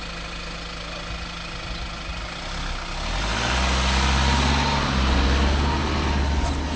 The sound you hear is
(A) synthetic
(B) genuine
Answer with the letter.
B